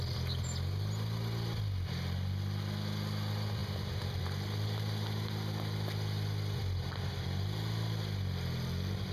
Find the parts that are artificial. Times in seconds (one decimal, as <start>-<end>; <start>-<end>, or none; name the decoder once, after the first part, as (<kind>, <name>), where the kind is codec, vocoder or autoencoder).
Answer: none